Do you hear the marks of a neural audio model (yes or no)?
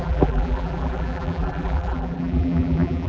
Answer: yes